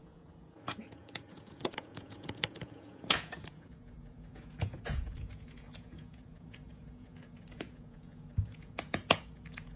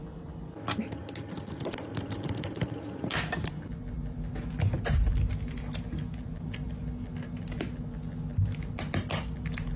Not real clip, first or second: first